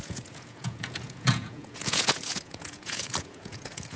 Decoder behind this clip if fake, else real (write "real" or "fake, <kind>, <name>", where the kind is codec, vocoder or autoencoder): fake, vocoder, Vocos